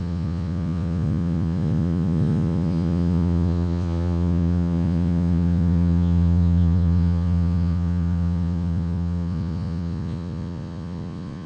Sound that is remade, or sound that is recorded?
remade